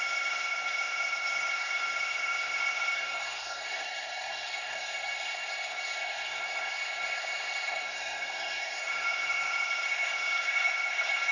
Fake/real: fake